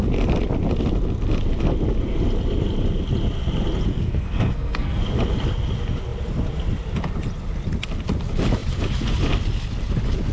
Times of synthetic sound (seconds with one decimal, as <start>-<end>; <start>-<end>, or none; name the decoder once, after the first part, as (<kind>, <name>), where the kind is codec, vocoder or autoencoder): 3.9-5.0 (codec, SNAC)